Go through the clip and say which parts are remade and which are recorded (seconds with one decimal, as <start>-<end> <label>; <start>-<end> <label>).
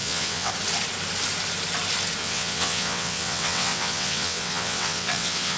0.0-0.5 remade; 0.5-2.2 recorded; 2.2-5.6 remade